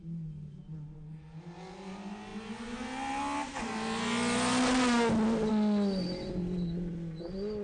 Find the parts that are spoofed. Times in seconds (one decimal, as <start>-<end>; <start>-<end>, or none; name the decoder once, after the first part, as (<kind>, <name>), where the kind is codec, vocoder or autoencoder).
none